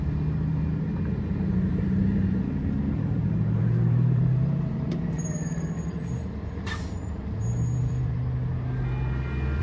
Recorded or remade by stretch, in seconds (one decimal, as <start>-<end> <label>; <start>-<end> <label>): 0.0-8.5 remade; 8.5-9.6 recorded